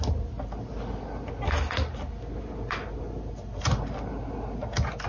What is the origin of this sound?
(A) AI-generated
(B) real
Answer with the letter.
B